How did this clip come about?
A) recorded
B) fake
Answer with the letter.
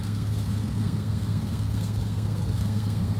B